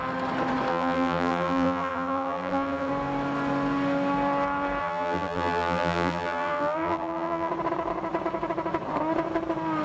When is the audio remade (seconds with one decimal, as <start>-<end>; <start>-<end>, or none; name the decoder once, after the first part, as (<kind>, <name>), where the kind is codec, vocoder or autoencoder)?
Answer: 0.7-2.9 (vocoder, BigVGAN v2); 4.8-7.5